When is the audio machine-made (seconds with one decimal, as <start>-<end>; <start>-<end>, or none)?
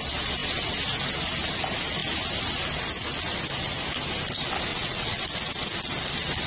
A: 4.7-5.2